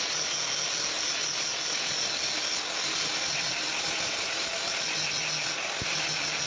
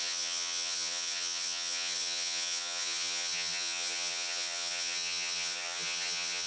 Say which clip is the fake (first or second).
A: second